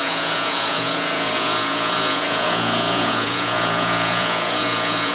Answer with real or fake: fake